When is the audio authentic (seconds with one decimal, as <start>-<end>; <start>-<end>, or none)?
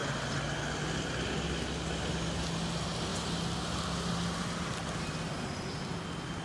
0.0-6.4